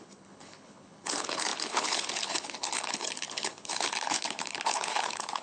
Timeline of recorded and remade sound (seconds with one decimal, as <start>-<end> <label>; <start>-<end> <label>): 0.0-5.4 remade